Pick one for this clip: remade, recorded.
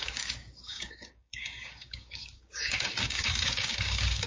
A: remade